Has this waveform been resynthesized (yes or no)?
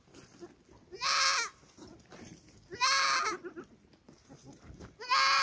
no